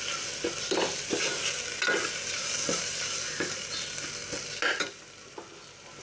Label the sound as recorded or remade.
recorded